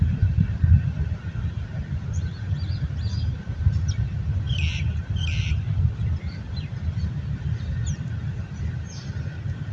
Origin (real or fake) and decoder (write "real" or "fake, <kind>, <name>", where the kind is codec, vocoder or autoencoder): real